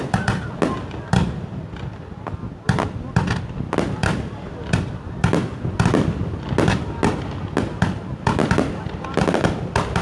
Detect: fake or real real